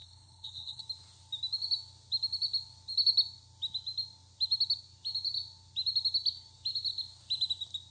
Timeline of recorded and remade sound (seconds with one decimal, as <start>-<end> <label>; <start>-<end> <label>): 0.0-0.8 remade; 0.8-7.9 recorded